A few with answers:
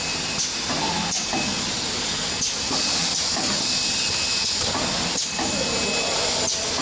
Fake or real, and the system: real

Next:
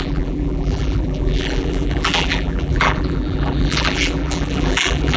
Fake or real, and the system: fake, vocoder, BigVGAN v2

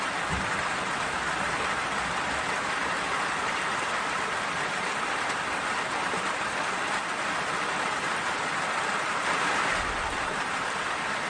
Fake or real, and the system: fake, vocoder, BigVGAN v2